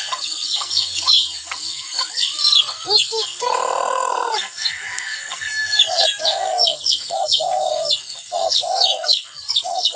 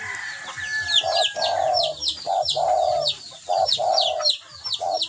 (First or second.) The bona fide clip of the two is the second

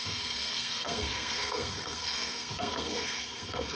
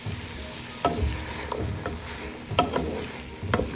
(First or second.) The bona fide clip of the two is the second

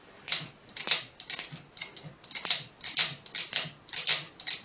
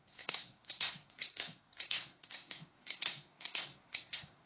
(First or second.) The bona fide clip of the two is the first